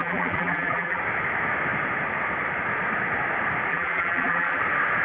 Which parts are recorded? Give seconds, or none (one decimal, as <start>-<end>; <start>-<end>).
1.0-3.7; 4.6-5.0

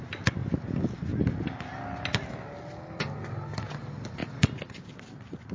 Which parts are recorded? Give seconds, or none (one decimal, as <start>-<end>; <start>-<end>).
0.0-5.5

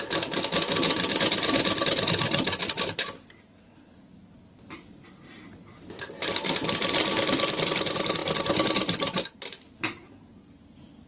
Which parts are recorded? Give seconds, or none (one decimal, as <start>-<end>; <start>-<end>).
0.0-11.1

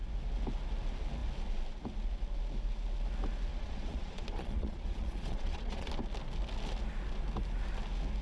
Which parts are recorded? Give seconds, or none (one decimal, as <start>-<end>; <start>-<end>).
0.0-3.5; 5.9-8.2

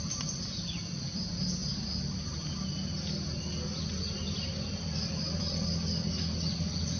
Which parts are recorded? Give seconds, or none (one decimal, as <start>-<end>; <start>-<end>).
0.0-7.0